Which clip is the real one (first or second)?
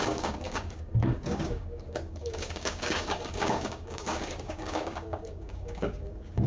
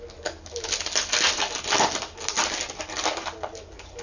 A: second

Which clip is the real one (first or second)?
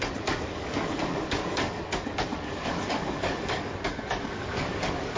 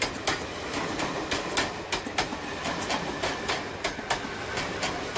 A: second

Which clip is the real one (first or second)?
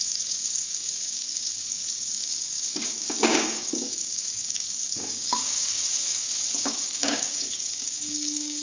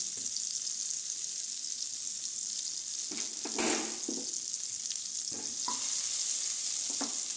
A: second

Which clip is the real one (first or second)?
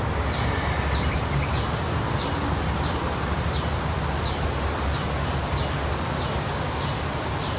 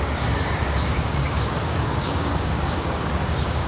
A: first